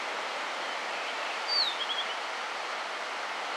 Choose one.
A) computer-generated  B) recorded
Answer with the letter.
A